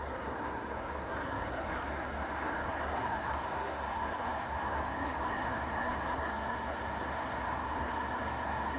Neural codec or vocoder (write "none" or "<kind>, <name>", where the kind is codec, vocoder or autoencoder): codec, SNAC